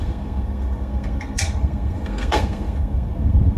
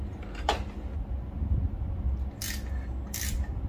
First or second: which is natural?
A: second